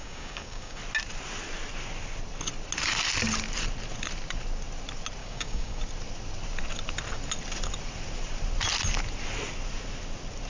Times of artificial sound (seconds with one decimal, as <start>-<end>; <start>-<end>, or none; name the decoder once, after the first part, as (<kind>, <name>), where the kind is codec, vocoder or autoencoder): 0.0-0.8 (codec, DAC); 5.2-5.8